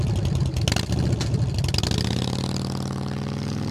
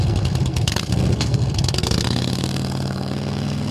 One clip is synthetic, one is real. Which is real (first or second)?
first